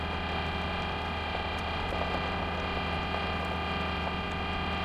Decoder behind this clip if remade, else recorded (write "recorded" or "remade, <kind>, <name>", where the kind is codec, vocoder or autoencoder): recorded